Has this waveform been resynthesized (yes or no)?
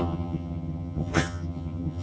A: yes